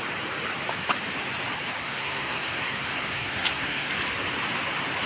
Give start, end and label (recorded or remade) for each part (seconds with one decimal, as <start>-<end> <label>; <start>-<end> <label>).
0.0-1.8 recorded; 1.8-3.9 remade; 3.9-5.1 recorded